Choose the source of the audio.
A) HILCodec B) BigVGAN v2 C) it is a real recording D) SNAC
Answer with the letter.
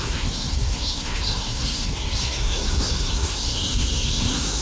D